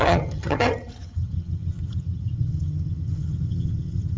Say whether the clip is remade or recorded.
remade